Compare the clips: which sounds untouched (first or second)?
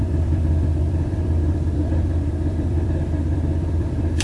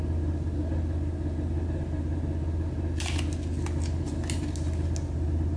second